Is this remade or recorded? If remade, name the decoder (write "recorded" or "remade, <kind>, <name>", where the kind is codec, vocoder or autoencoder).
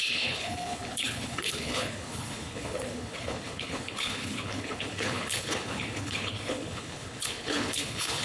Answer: remade, codec, HILCodec